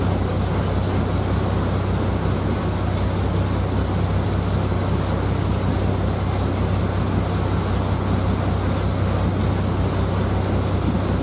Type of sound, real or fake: real